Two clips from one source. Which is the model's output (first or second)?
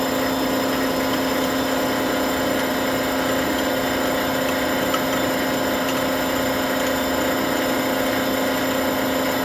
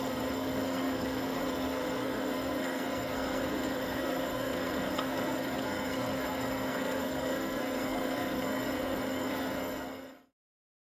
second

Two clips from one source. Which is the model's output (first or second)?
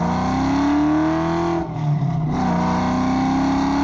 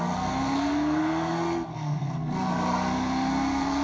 second